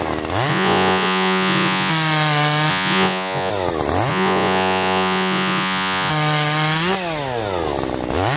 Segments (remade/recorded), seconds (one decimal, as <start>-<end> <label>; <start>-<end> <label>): 0.0-0.5 recorded; 0.5-1.9 remade; 1.9-2.7 recorded; 2.7-3.5 remade; 3.5-4.1 recorded; 4.1-6.1 remade; 6.1-8.4 recorded